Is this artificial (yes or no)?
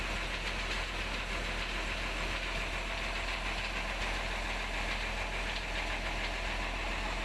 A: no